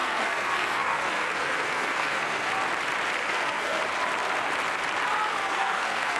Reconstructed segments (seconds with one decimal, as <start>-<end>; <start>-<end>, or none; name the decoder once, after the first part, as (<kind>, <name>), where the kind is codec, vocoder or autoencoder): 0.0-2.5 (codec, SNAC); 3.2-3.8; 5.3-6.2